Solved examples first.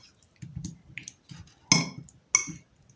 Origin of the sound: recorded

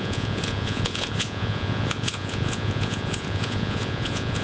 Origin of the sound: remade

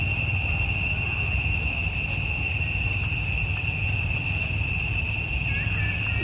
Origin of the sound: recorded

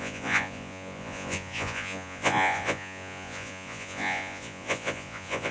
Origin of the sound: remade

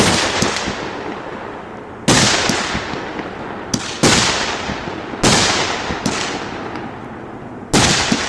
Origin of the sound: recorded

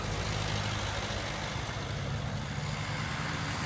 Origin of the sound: recorded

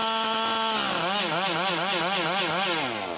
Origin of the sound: recorded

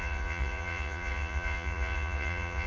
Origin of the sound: remade